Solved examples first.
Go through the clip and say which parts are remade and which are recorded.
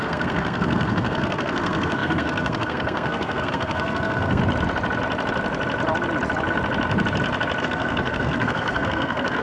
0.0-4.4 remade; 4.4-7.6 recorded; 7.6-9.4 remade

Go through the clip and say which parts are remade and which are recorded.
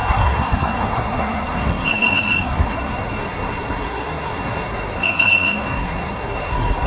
0.0-6.9 remade